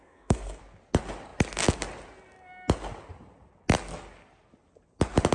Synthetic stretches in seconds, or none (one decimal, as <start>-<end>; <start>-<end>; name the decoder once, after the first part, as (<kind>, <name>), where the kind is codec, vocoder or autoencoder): 0.0-0.6 (codec, SNAC)